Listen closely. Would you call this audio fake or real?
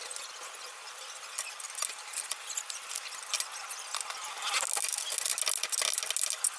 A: real